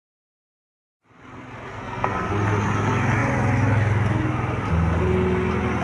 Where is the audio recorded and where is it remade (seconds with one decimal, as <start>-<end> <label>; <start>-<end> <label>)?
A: 0.0-1.7 recorded; 1.7-2.3 remade; 2.3-5.8 recorded